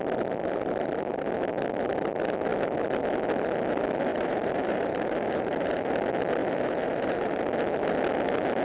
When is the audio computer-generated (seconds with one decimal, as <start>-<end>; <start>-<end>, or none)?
0.4-1.3; 4.1-5.9; 6.4-7.4